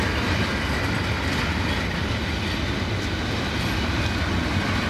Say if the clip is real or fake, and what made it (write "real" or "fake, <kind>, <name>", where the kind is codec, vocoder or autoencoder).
real